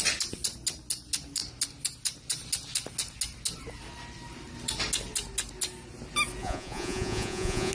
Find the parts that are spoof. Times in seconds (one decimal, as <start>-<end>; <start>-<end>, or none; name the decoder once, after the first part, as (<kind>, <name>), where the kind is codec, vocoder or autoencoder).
6.4-7.7 (vocoder, Vocos)